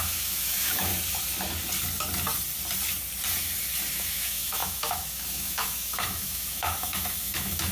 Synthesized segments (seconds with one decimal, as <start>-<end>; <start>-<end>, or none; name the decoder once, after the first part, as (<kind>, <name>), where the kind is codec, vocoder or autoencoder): 0.0-0.9 (autoencoder, DAC-VAE); 3.9-7.7